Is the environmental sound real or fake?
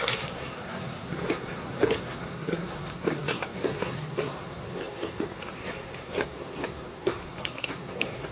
fake